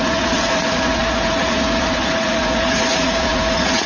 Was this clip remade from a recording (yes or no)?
yes